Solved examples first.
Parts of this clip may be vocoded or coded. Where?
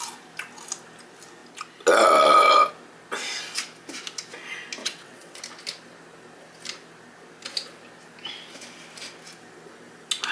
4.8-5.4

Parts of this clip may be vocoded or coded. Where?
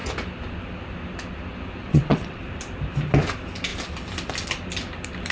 1.8-2.4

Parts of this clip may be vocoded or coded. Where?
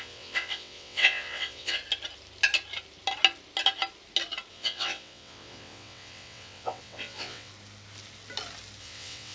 0.0-1.8; 4.5-7.5; 8.8-9.3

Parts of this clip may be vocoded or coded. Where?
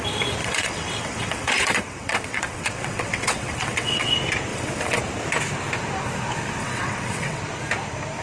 0.4-4.1; 4.5-5.0; 6.6-7.4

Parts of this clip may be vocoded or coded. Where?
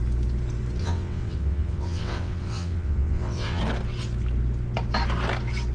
0.8-3.6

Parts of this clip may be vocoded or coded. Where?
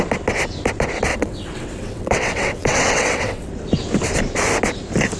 1.1-3.5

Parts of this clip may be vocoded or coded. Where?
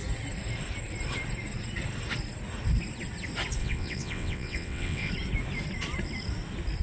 3.6-5.1